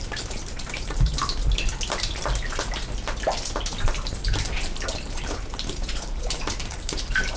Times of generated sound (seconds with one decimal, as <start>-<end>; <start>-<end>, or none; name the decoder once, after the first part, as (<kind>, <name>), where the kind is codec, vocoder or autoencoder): 0.0-1.1 (vocoder, BigVGAN v2); 4.9-7.4